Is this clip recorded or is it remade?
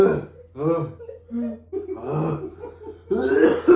recorded